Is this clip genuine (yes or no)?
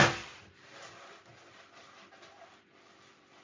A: yes